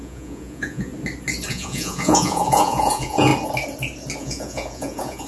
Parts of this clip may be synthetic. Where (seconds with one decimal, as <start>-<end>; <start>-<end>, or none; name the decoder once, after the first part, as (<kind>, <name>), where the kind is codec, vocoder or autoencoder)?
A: 0.0-0.9 (vocoder, Vocos); 1.5-3.3; 4.2-5.3